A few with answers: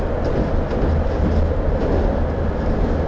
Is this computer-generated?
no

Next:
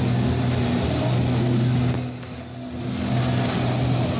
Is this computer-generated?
no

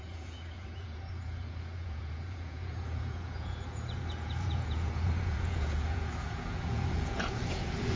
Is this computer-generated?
yes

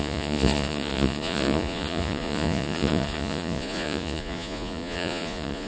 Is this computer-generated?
yes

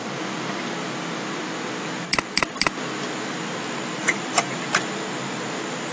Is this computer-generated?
no